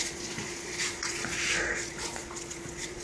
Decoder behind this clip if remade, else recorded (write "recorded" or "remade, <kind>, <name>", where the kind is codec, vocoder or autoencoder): remade, vocoder, Vocos